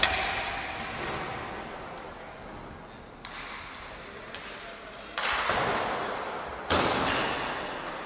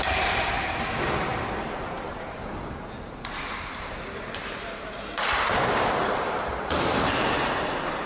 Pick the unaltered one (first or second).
first